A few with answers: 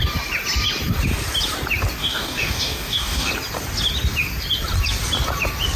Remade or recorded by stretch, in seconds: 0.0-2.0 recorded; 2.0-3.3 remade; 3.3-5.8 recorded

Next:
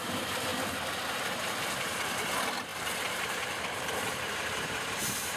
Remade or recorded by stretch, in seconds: 0.0-0.5 remade; 0.5-1.1 recorded; 1.1-5.4 remade

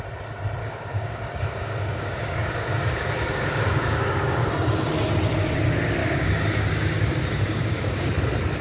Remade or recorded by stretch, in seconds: 0.0-0.6 recorded; 0.6-4.5 remade; 4.5-6.0 recorded; 6.0-8.1 remade; 8.1-8.6 recorded